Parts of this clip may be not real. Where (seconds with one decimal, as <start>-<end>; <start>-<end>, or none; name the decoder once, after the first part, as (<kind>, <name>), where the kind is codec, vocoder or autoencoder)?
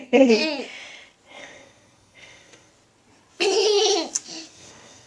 0.0-0.4 (codec, SNAC); 1.3-2.7; 4.5-5.1